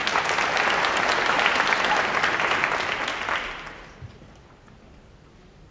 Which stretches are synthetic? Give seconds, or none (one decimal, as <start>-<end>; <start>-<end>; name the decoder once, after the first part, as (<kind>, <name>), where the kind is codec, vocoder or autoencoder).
none